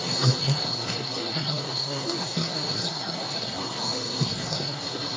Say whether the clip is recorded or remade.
remade